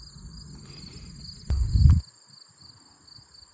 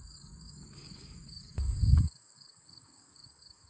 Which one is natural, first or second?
first